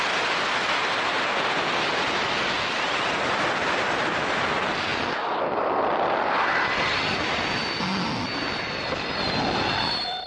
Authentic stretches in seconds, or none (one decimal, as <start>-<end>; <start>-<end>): 0.0-10.3